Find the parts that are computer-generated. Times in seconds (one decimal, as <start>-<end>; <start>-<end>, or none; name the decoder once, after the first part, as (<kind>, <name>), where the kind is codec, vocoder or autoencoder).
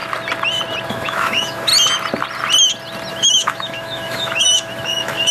0.9-1.7 (autoencoder, DAC-VAE); 3.1-5.3